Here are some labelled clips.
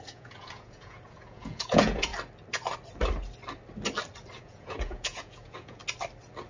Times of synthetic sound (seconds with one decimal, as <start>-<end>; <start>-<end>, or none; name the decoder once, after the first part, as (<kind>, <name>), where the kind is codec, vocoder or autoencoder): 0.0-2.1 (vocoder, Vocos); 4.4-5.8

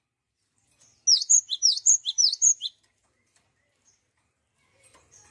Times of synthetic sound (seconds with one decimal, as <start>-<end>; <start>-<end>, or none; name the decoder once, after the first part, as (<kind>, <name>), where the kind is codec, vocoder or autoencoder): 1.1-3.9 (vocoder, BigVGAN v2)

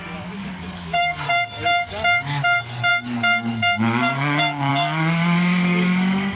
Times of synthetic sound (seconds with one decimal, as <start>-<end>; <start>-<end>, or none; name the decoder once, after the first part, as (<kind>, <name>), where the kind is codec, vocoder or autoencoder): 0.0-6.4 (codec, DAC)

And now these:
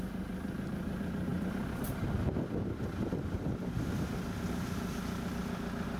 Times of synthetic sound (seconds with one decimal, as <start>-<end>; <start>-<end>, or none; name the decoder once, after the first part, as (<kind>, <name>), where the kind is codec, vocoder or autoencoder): none